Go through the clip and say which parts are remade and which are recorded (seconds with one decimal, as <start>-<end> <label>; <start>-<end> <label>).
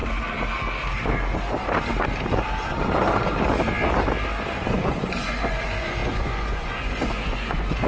0.0-4.7 recorded; 4.7-7.9 remade